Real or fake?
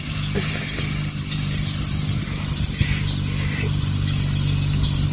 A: real